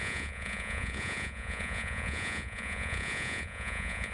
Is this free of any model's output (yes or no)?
no